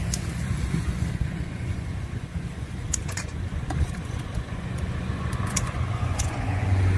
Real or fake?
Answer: fake